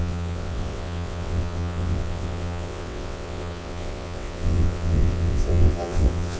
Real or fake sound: fake